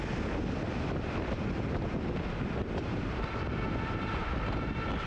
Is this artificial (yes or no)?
no